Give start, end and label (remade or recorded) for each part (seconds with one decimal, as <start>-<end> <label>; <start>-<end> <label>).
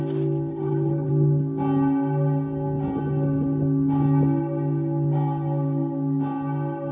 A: 0.0-0.5 recorded; 0.5-1.1 remade; 1.1-6.9 recorded